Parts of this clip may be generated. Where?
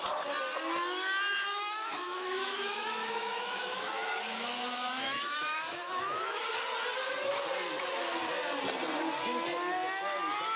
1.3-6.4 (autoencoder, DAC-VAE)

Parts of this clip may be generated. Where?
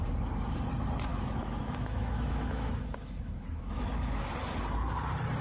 1.1-4.3 (autoencoder, DAC-VAE)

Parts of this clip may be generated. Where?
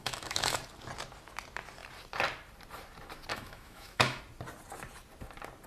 0.0-0.6 (autoencoder, DAC-VAE); 3.3-4.2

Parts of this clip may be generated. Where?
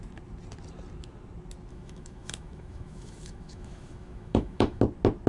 1.7-4.8 (autoencoder, DAC-VAE)